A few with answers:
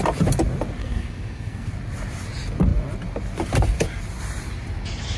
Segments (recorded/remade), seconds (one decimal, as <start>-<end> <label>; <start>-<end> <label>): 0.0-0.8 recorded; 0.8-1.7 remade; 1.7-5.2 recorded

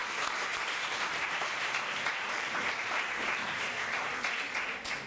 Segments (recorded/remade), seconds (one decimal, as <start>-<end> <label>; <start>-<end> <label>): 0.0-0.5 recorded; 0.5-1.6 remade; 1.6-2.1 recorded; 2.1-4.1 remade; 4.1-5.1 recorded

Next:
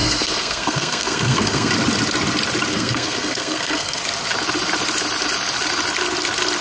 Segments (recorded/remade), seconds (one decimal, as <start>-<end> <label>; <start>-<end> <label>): 0.0-1.7 remade; 1.7-2.7 recorded; 2.7-4.0 remade; 4.0-6.6 recorded

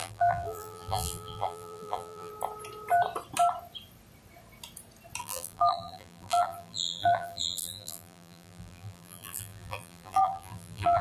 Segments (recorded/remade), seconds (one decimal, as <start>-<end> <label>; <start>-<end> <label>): 0.0-2.3 remade; 2.3-5.2 recorded; 5.2-11.0 remade

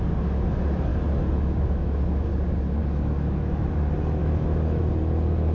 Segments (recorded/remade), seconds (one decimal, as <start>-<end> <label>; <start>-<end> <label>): 0.0-0.9 recorded; 0.9-2.3 remade; 2.3-2.8 recorded; 2.8-3.8 remade; 3.8-4.2 recorded; 4.2-4.8 remade; 4.8-5.5 recorded

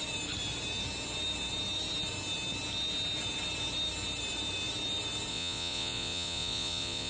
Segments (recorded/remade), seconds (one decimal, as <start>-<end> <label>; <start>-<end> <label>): 0.0-5.3 recorded; 5.3-7.1 remade

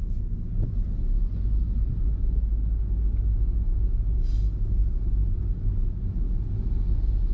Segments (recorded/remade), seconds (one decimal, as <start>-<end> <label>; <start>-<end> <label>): 0.0-7.3 recorded